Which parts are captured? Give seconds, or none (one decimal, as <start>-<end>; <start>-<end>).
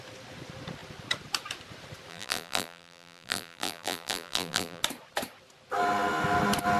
0.0-2.1; 4.8-6.8